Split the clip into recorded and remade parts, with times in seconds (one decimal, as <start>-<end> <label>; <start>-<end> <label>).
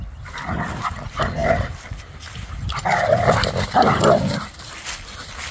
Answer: 0.0-5.5 recorded